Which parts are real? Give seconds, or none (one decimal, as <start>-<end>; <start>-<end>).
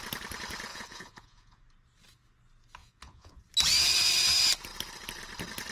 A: 0.0-0.7; 1.6-2.8; 3.4-5.7